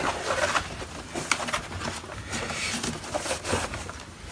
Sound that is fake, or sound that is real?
real